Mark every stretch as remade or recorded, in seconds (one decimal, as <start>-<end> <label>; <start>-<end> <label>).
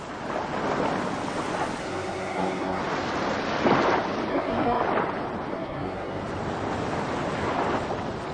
0.0-1.8 recorded; 1.8-2.8 remade; 2.8-4.3 recorded; 4.3-4.8 remade; 4.8-5.5 recorded; 5.5-6.2 remade; 6.2-8.3 recorded